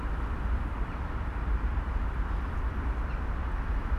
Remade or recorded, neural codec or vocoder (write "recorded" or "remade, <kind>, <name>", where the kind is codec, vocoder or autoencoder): recorded